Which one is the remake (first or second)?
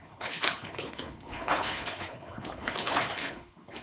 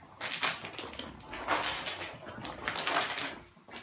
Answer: first